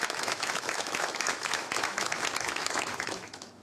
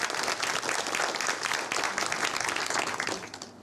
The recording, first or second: second